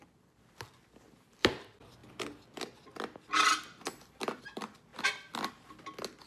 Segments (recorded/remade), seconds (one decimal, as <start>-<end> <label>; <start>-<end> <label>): 0.0-6.3 recorded